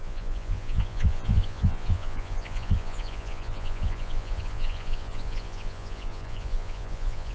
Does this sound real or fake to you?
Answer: fake